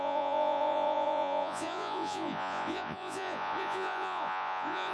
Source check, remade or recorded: remade